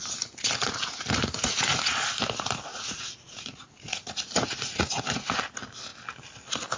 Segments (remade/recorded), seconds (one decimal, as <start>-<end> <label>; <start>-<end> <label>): 0.0-1.2 recorded; 1.2-1.8 remade; 1.8-2.7 recorded; 2.7-5.4 remade; 5.4-6.8 recorded